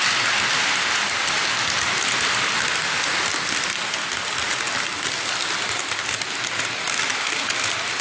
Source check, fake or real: real